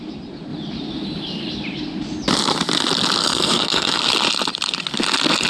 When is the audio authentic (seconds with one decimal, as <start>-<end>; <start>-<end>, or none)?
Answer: 0.0-3.2; 4.0-5.5